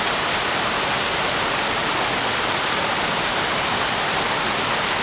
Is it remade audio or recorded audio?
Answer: recorded